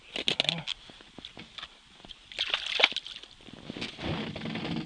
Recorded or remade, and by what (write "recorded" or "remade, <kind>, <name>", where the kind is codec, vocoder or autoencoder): recorded